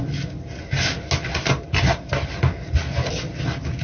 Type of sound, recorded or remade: recorded